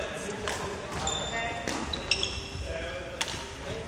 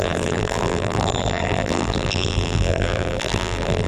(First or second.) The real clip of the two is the first